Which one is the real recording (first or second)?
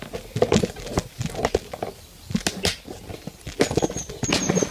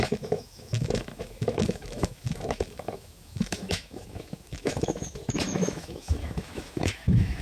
first